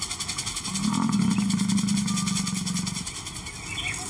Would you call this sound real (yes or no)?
yes